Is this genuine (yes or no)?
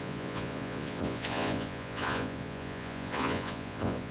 no